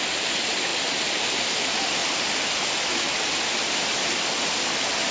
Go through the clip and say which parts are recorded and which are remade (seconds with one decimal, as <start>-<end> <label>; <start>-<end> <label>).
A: 0.0-5.1 recorded